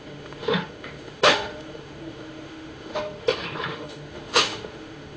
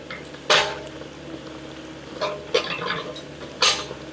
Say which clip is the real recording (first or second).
second